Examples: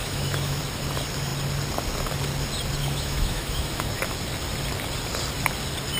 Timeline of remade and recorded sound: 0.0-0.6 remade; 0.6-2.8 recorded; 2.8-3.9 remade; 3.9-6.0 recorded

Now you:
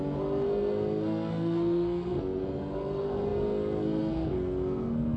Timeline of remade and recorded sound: 0.0-5.2 remade

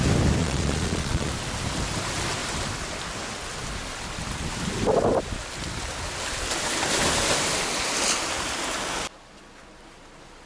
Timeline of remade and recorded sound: 0.0-0.4 recorded; 0.4-1.3 remade; 1.3-10.5 recorded

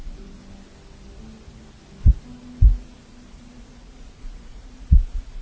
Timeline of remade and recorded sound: 0.0-0.4 remade; 0.4-3.6 recorded; 3.6-5.4 remade

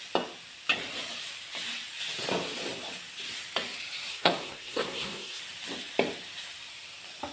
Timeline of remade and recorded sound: 0.0-4.1 recorded; 4.1-5.4 remade; 5.4-7.3 recorded

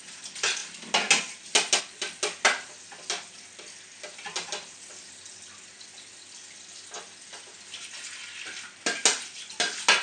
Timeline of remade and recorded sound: 0.0-10.0 recorded